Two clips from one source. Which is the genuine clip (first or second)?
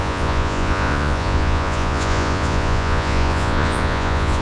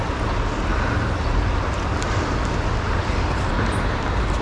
second